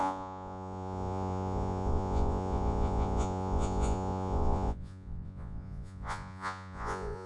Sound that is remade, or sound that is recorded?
remade